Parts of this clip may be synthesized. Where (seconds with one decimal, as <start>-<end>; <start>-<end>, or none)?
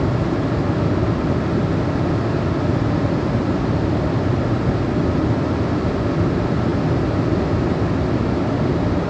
none